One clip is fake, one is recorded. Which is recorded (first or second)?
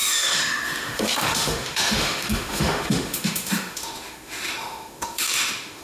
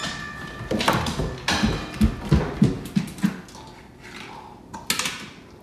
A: second